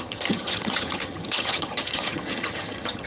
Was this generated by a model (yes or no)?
yes